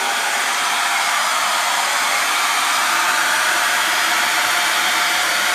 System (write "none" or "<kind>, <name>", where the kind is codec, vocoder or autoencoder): vocoder, BigVGAN v2